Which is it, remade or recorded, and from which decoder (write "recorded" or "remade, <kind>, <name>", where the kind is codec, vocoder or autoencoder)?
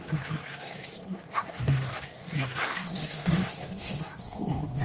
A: remade, codec, SNAC